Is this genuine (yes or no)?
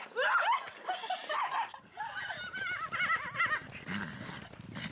yes